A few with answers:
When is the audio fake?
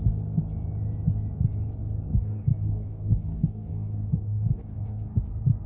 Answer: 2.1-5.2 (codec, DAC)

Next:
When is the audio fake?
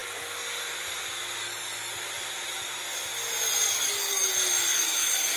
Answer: 1.4-1.9 (codec, DAC); 3.7-4.3; 4.7-5.4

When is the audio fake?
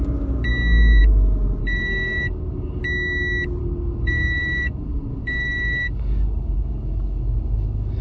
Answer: 1.6-2.8 (codec, DAC); 3.6-8.0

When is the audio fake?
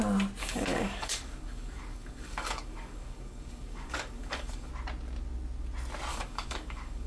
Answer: 0.4-4.7 (codec, DAC); 6.1-7.1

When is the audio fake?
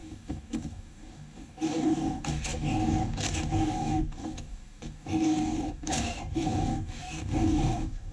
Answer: 0.0-8.1 (codec, DAC)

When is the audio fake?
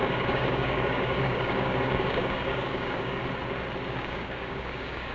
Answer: 0.0-3.2 (codec, DAC); 4.0-5.1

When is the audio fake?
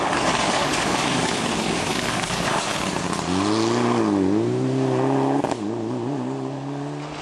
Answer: 0.0-2.7 (codec, DAC)